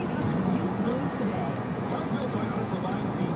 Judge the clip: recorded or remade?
remade